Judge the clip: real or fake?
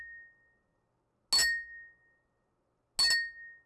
real